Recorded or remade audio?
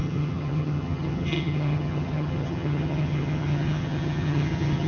remade